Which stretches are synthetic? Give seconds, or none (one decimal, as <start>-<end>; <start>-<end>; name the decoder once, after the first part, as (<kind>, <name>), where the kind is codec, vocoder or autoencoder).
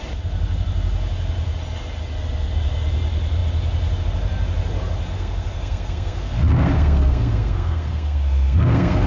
5.1-9.1 (codec, SNAC)